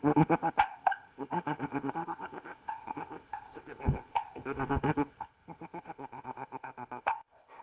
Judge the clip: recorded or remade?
remade